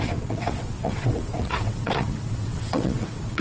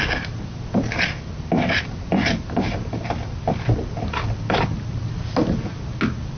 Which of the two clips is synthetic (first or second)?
first